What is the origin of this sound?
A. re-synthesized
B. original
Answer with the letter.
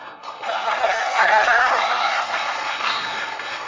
A